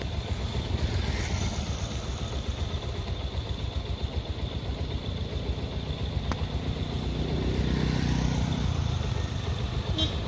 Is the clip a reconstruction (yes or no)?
no